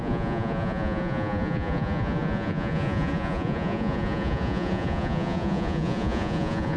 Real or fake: fake